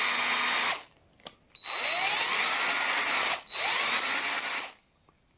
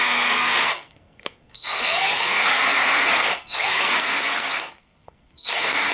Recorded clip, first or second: first